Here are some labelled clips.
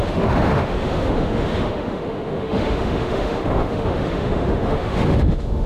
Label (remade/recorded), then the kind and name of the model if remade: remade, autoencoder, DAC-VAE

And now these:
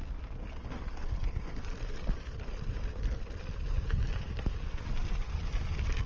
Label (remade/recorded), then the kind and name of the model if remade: recorded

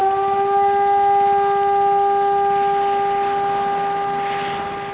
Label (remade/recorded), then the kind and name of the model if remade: recorded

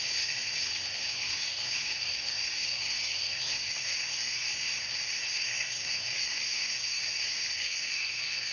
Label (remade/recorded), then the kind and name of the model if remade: remade, codec, SNAC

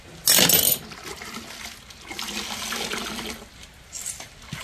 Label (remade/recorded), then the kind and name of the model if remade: recorded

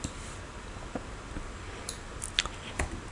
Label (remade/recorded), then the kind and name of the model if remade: recorded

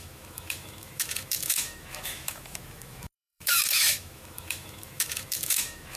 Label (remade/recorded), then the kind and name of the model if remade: remade, autoencoder, DAC-VAE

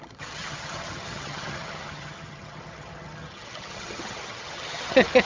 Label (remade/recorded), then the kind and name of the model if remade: remade, vocoder, HiFi-GAN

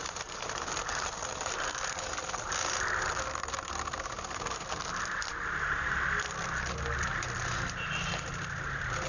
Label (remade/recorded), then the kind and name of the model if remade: recorded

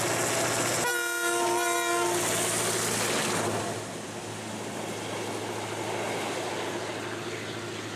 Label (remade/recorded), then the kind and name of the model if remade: recorded